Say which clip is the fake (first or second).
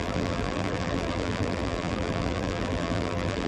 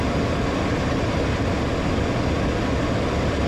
first